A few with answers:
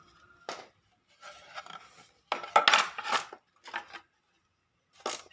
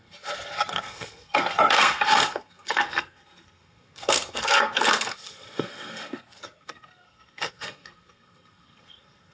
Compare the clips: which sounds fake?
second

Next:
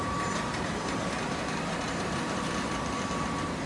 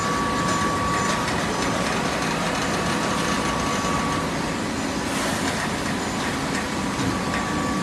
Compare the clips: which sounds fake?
first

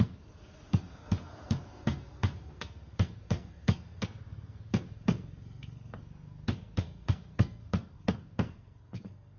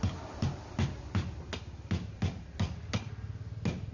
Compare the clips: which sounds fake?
first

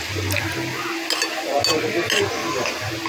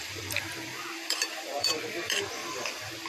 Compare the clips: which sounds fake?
second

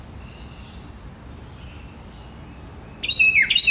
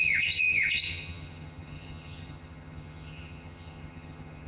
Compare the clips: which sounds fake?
second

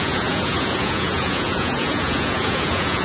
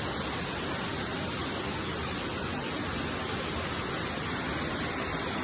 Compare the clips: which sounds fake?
first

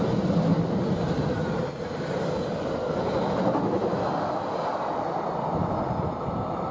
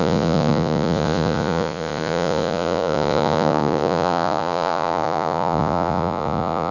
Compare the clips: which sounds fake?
second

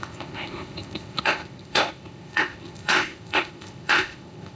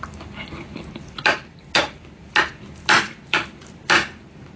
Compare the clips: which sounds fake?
first